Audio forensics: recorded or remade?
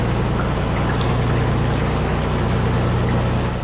recorded